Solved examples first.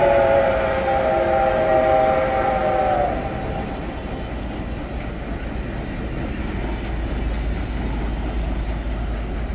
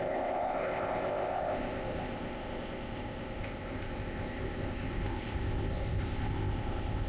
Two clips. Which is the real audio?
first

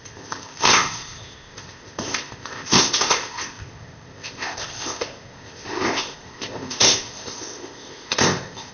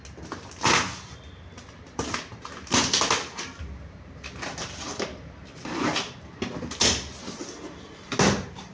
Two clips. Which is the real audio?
second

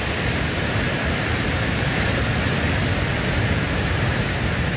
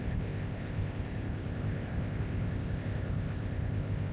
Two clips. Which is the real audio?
first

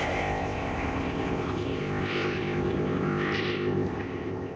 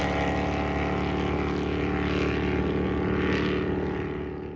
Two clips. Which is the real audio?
second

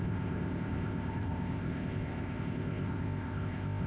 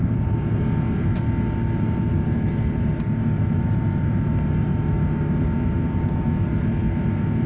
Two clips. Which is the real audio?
second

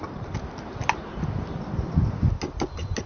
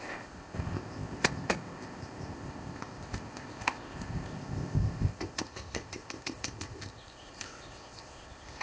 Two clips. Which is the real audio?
first